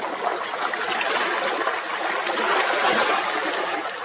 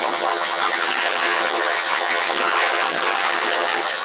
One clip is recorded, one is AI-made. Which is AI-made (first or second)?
second